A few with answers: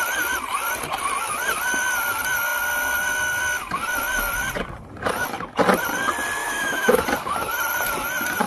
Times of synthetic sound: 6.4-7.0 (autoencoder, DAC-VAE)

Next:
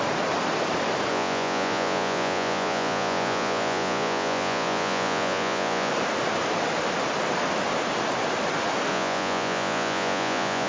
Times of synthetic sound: 1.1-5.9 (vocoder, Vocos); 8.9-10.7

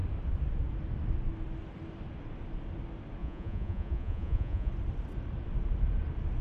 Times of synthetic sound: 3.2-4.7 (vocoder, Vocos)

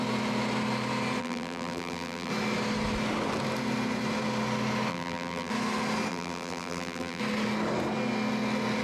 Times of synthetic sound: 1.2-2.3 (vocoder, BigVGAN v2); 4.9-5.5; 6.1-7.2

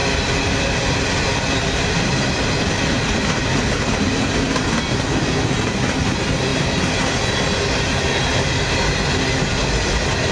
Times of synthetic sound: none

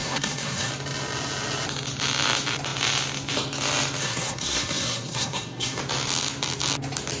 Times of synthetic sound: 0.0-0.7 (codec, SNAC); 4.0-5.8

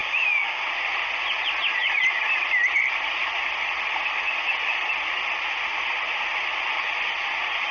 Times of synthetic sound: 0.0-0.6 (codec, DAC)